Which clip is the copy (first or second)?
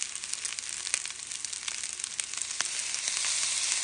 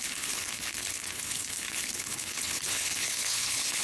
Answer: second